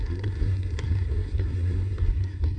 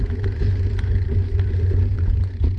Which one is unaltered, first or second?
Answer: second